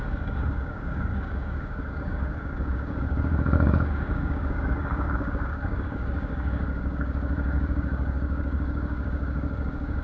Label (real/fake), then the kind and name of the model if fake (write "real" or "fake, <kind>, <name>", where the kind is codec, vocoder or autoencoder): fake, codec, DAC